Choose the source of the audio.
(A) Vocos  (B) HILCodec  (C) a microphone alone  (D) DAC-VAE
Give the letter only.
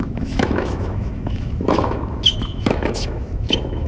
D